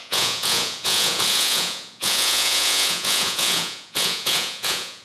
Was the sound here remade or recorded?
remade